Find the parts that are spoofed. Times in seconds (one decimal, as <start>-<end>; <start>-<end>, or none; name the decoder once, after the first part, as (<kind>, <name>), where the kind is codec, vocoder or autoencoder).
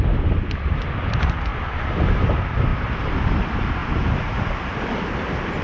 0.0-1.5 (vocoder, BigVGAN v2); 2.1-3.8; 4.7-5.6